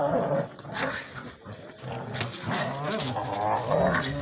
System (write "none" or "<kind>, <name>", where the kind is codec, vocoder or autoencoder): none